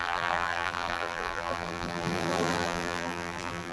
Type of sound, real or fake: fake